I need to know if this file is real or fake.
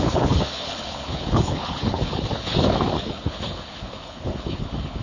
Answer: fake